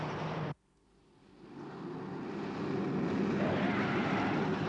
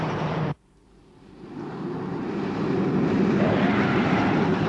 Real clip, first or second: first